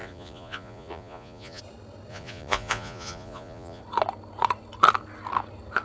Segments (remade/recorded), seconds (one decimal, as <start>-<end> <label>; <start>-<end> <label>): 0.0-1.6 remade; 1.6-2.1 recorded; 2.1-3.8 remade; 3.8-5.8 recorded